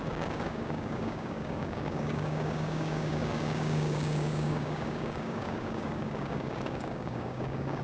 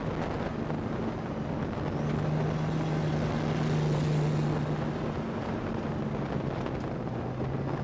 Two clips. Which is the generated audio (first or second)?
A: first